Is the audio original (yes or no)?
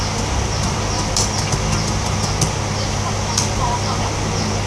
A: yes